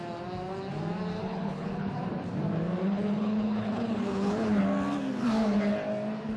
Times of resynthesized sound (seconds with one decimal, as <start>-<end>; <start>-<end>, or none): 1.2-1.9; 2.8-4.6